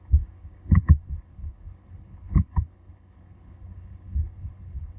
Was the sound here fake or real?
fake